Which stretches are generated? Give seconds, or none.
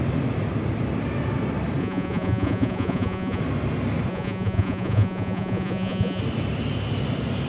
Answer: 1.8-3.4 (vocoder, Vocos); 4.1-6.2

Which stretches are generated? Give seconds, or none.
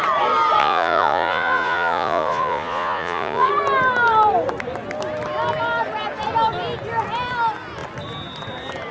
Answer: 0.6-3.5 (vocoder, Vocos)